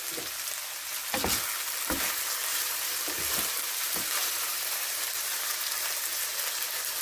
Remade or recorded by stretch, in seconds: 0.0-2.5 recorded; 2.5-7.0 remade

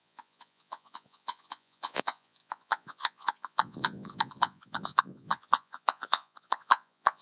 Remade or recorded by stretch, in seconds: 0.0-7.2 remade

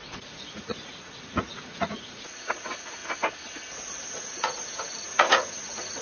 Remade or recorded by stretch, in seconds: 0.0-3.0 remade; 3.0-4.1 recorded; 4.1-6.0 remade

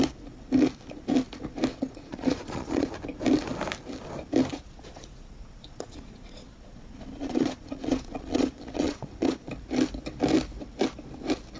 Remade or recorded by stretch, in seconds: 0.0-1.7 recorded; 1.7-2.9 remade; 2.9-4.5 recorded; 4.5-6.8 remade; 6.8-7.2 recorded; 7.2-9.5 remade; 9.5-11.6 recorded

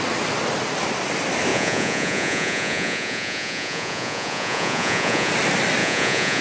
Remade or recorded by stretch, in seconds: 0.0-1.5 recorded; 1.5-5.3 remade; 5.3-5.8 recorded; 5.8-6.4 remade

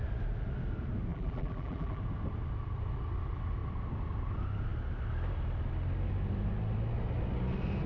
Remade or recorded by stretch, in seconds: 0.0-1.1 recorded; 1.1-2.0 remade; 2.0-7.9 recorded

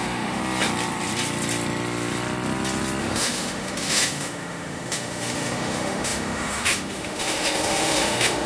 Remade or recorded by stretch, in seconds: 0.0-0.4 remade; 0.4-3.0 recorded; 3.0-8.5 remade